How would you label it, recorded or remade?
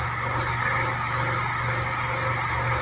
recorded